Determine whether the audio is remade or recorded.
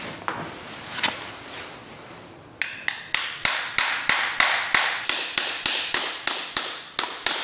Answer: recorded